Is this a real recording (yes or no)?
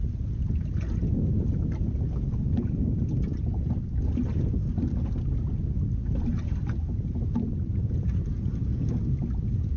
yes